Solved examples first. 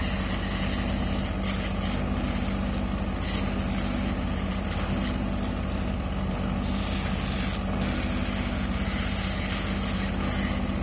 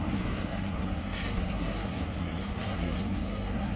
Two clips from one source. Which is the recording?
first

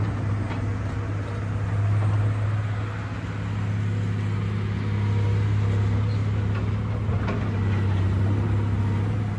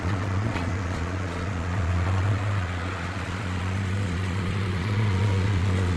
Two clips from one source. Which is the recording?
first